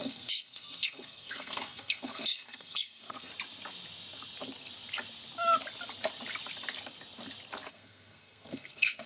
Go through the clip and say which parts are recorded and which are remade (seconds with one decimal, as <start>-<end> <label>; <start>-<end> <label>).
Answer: 0.0-3.3 remade; 3.3-7.7 recorded; 7.7-9.1 remade